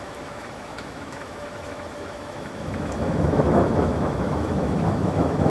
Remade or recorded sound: remade